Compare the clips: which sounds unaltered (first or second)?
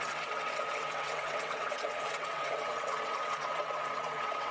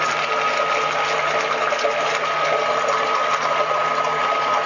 second